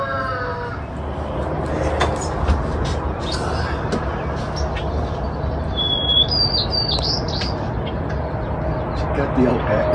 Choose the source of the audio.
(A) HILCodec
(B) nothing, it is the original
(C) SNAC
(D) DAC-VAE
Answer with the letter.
B